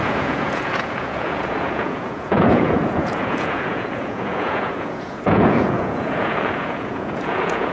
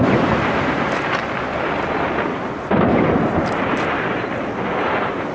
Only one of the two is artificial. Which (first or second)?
first